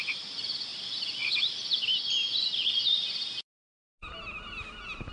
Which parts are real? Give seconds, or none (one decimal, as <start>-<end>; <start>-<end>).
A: 0.0-5.1

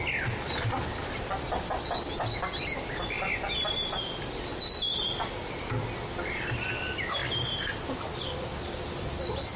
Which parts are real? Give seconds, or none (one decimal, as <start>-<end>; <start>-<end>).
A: 0.0-9.6

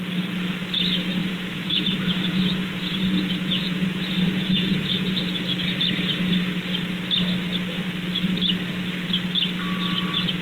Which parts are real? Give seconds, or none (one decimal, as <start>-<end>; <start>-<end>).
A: 0.0-1.2; 5.2-10.4

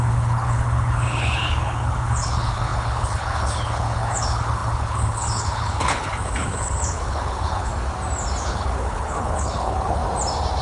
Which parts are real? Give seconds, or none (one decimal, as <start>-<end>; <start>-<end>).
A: 7.7-8.4; 10.0-10.6

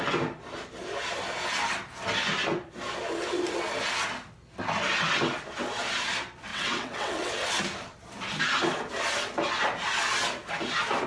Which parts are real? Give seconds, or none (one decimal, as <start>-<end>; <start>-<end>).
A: 0.0-6.5; 7.3-11.1

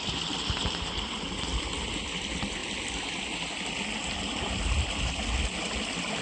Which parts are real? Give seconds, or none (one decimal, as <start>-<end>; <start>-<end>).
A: 0.0-6.2

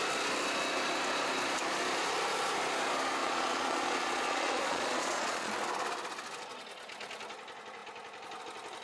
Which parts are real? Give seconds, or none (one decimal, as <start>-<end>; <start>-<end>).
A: 0.0-3.2; 5.5-8.8

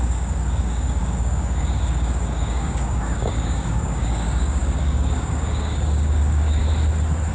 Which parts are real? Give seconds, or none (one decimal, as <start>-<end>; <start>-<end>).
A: 6.6-7.3